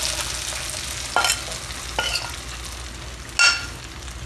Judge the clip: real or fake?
real